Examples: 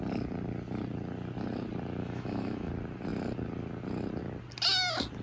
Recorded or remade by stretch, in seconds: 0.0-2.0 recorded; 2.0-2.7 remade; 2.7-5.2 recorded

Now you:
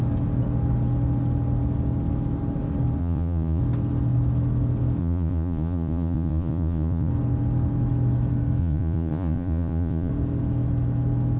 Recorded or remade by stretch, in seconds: 0.0-3.0 recorded; 3.0-3.6 remade; 3.6-5.0 recorded; 5.0-7.1 remade; 7.1-8.6 recorded; 8.6-10.1 remade; 10.1-11.4 recorded

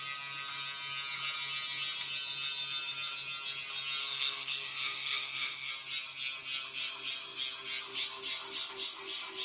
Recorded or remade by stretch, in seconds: 0.0-4.0 recorded; 4.0-5.7 remade; 5.7-9.4 recorded

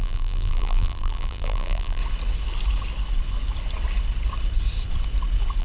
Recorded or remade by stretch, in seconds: 0.0-2.0 remade; 2.0-5.6 recorded